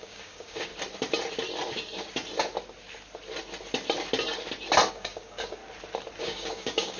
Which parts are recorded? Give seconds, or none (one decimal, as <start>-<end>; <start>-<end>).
0.7-4.9; 5.6-6.2